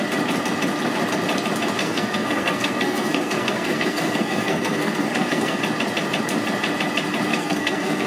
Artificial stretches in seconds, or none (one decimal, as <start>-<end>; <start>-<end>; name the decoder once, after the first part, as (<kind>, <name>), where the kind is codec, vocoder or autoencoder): 1.8-5.6 (codec, SNAC); 7.3-8.1